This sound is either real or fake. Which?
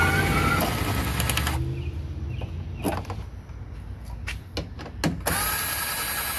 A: real